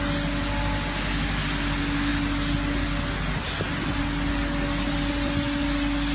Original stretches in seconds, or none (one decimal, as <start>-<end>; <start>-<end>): 0.0-6.1